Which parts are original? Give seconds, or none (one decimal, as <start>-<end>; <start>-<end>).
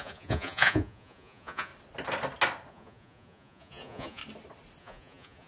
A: 1.7-2.7; 4.2-4.8